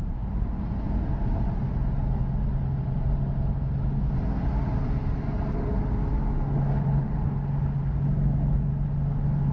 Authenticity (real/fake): real